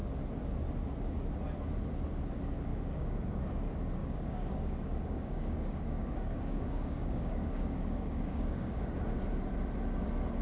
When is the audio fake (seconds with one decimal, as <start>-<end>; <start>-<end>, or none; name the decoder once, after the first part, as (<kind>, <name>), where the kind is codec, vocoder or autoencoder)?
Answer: 2.7-3.4 (codec, DAC); 4.0-8.9